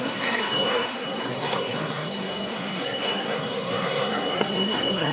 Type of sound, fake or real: fake